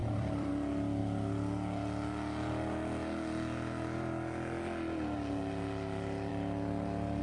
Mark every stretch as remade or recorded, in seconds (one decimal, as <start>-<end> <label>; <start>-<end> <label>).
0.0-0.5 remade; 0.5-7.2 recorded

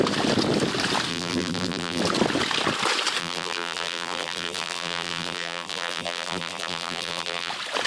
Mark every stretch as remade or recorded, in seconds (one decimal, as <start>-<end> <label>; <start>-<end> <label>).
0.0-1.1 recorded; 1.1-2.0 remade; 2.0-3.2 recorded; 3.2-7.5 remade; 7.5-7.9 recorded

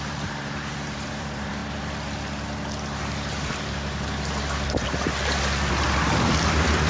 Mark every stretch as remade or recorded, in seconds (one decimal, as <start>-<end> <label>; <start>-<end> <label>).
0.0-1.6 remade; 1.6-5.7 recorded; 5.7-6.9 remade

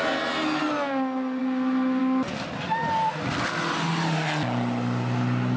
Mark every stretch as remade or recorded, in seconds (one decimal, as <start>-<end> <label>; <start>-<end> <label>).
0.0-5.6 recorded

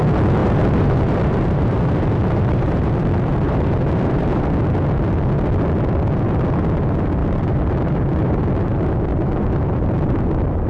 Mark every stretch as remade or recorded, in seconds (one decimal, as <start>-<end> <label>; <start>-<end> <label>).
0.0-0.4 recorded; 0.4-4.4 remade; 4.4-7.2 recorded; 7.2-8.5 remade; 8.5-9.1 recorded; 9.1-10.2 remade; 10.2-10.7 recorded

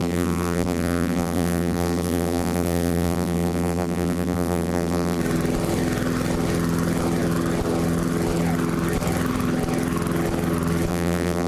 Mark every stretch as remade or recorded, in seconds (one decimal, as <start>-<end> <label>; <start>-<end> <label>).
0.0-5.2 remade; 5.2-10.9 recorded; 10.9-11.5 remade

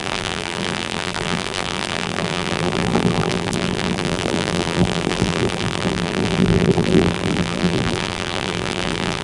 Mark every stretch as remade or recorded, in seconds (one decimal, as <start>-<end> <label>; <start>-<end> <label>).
0.0-9.2 remade

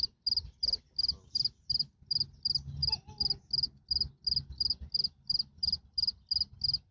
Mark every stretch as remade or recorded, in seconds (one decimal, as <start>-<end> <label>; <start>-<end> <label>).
0.0-6.9 recorded